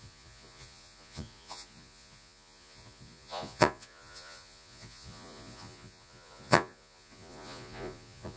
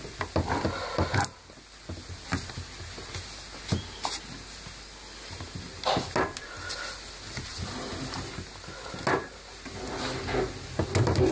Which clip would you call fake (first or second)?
first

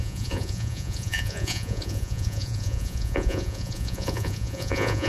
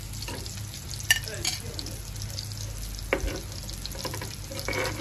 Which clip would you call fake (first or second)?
first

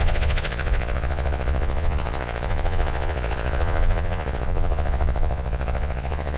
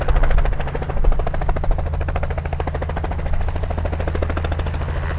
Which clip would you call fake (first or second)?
first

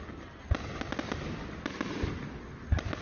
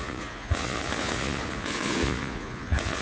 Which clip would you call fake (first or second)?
second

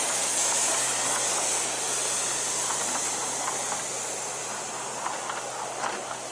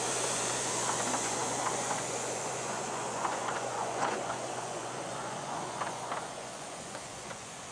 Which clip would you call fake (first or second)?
second